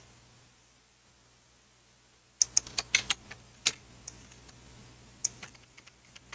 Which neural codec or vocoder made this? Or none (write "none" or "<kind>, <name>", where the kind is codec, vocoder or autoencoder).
none